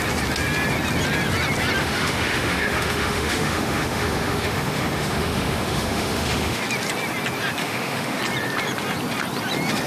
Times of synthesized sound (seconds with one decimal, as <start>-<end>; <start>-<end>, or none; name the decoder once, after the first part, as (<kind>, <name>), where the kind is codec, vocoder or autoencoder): 1.8-6.6 (autoencoder, DAC-VAE); 7.6-8.2